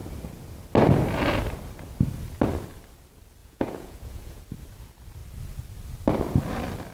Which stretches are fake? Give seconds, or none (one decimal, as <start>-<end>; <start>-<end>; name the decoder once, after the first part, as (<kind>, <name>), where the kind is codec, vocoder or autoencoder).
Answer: 3.4-4.4 (vocoder, Vocos)